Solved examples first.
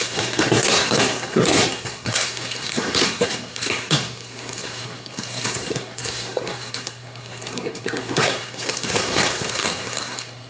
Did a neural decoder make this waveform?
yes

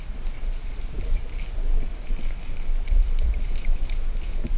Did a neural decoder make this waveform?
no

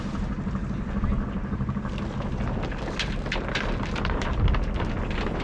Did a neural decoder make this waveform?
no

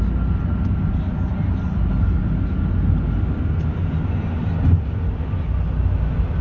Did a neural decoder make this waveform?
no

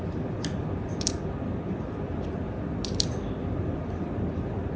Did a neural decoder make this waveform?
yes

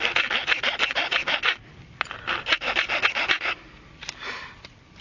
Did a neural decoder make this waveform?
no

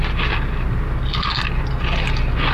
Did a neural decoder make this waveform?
no